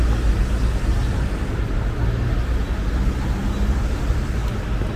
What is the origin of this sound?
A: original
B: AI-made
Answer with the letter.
A